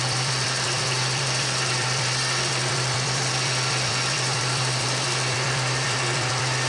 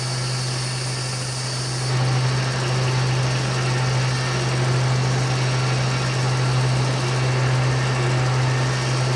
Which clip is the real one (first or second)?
second